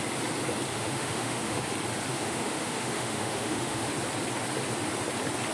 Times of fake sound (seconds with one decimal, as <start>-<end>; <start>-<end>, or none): 0.7-1.7; 2.1-3.9